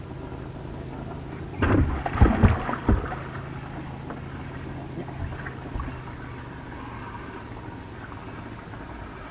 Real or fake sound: real